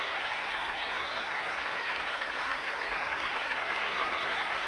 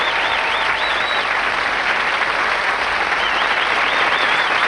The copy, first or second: first